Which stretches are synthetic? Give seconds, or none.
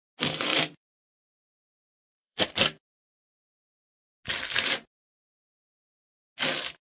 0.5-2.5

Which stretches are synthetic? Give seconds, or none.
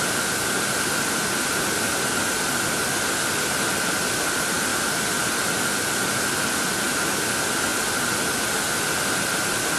none